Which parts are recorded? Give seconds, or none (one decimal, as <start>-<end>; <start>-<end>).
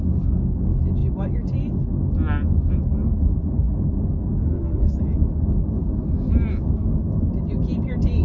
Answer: 0.0-4.4; 5.0-8.2